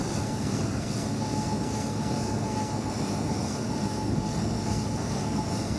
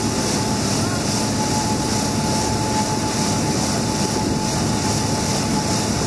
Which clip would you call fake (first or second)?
first